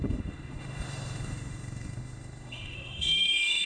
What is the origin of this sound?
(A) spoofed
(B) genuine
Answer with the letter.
A